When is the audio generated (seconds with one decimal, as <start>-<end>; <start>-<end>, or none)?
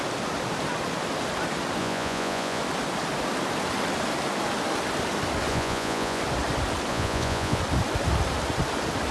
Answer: 1.8-2.6; 5.5-6.2; 6.9-7.6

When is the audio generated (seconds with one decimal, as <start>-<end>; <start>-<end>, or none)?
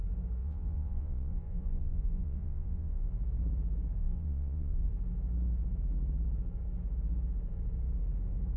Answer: 0.4-3.1; 4.0-4.9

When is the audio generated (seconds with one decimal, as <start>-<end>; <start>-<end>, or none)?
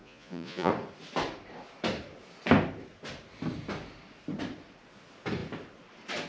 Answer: 0.0-0.7